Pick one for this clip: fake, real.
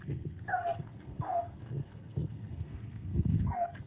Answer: fake